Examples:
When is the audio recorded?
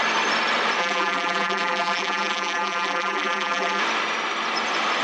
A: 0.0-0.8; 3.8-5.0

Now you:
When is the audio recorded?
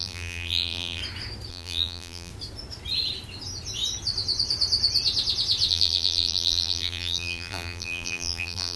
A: 1.0-1.5; 2.3-5.7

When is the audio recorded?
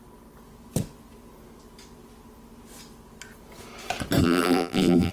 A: 0.0-4.2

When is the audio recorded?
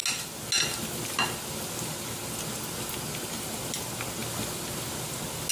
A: 0.0-5.5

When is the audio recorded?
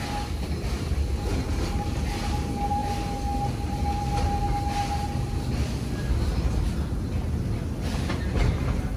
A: 0.0-1.3; 2.0-9.0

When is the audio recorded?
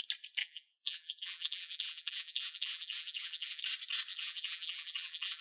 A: 0.0-0.4; 3.6-4.1